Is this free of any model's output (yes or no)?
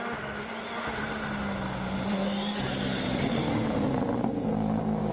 yes